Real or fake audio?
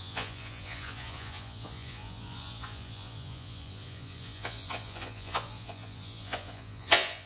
fake